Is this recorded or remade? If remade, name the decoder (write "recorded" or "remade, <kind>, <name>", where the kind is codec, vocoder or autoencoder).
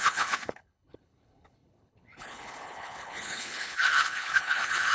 remade, codec, HILCodec